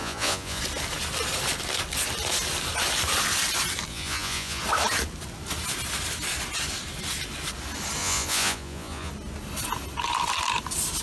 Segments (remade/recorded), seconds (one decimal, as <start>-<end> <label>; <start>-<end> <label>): 0.0-0.6 remade; 0.6-3.9 recorded; 3.9-4.6 remade; 4.6-8.0 recorded; 8.0-9.1 remade; 9.1-11.0 recorded